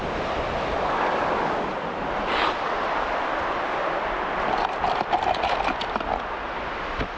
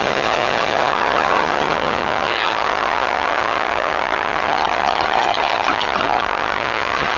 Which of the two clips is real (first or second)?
first